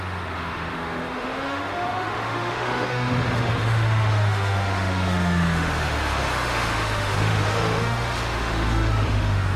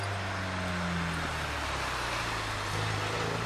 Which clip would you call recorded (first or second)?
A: second